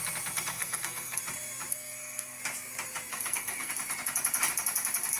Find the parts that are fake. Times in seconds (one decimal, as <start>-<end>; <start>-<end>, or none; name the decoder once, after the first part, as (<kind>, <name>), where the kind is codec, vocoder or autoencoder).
0.5-1.2 (codec, SNAC); 1.7-2.4; 3.1-3.7